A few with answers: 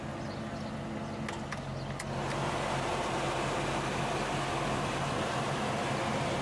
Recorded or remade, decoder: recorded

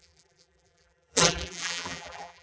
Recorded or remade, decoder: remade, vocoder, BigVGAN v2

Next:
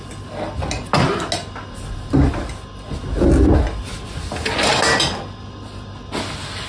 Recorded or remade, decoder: recorded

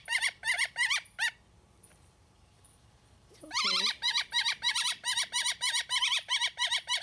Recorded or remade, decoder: remade, vocoder, BigVGAN v2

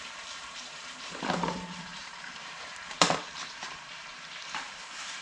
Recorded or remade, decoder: remade, vocoder, BigVGAN v2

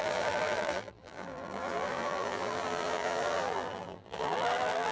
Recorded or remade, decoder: remade, vocoder, BigVGAN v2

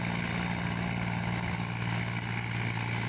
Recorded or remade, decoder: recorded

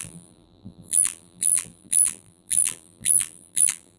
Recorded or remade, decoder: remade, vocoder, BigVGAN v2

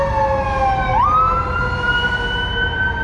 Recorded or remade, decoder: recorded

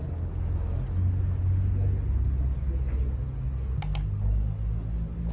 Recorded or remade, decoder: recorded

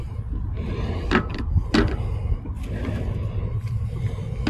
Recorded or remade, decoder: recorded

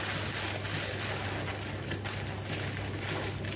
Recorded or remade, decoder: recorded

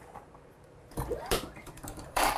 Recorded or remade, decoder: remade, vocoder, BigVGAN v2